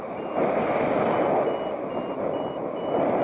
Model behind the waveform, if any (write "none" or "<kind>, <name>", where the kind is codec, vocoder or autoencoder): none